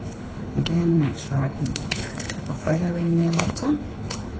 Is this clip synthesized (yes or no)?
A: yes